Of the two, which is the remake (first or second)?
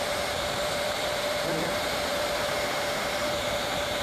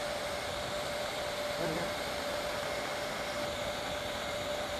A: first